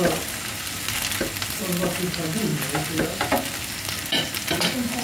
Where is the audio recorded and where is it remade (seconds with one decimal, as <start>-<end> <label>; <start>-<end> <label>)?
0.0-5.0 recorded